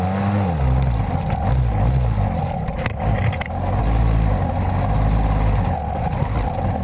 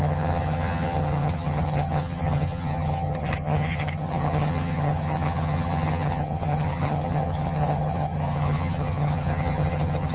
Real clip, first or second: first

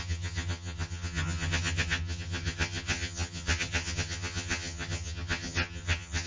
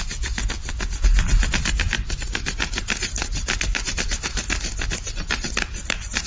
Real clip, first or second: second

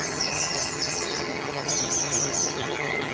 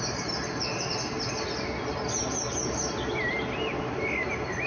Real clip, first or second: second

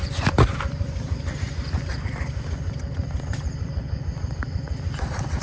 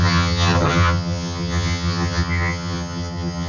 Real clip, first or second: first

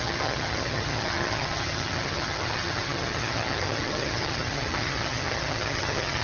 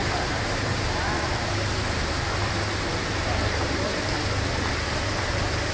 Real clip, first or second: second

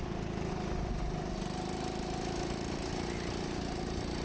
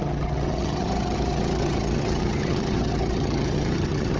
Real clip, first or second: first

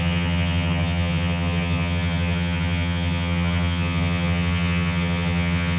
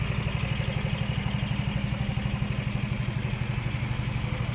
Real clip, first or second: second